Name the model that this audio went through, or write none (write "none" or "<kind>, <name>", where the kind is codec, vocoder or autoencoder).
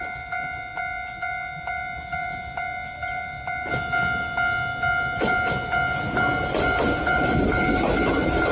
none